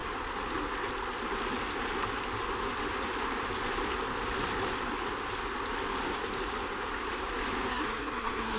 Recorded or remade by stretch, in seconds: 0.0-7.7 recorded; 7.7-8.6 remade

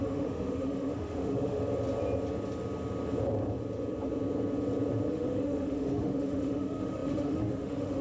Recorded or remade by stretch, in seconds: 0.0-1.6 remade; 1.6-5.1 recorded; 5.1-8.0 remade

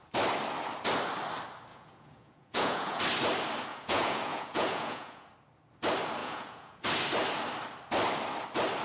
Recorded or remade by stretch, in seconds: 0.0-1.7 recorded; 1.7-3.0 remade; 3.0-3.7 recorded; 3.7-5.3 remade; 5.3-6.2 recorded; 6.2-6.8 remade; 6.8-8.8 recorded

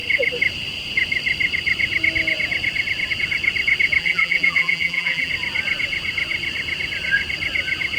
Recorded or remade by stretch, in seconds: 0.0-4.0 recorded; 4.0-5.3 remade; 5.3-8.0 recorded

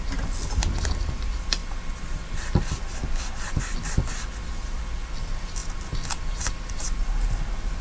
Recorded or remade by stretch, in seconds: 0.0-7.8 recorded

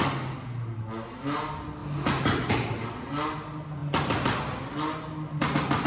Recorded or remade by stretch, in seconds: 0.0-5.9 recorded

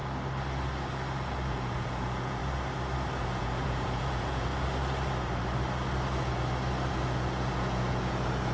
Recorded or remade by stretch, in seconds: 0.0-1.5 recorded; 1.5-2.4 remade; 2.4-3.2 recorded; 3.2-4.5 remade; 4.5-6.9 recorded; 6.9-8.5 remade